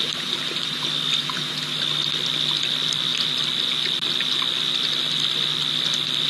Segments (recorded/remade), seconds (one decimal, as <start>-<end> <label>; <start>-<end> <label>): 0.0-6.3 recorded